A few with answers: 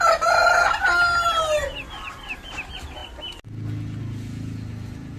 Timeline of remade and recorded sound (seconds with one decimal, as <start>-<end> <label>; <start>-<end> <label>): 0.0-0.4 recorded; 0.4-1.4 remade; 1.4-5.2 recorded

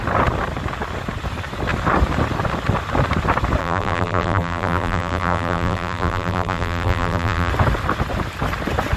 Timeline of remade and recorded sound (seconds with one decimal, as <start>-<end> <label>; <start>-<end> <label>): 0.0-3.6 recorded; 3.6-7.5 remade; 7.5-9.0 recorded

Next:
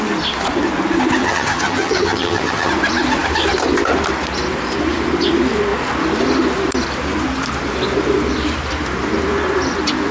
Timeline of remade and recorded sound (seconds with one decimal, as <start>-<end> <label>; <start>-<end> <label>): 0.0-1.2 recorded; 1.2-2.7 remade; 2.7-10.1 recorded